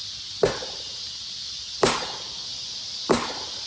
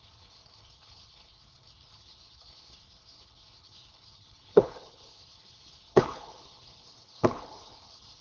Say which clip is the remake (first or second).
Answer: second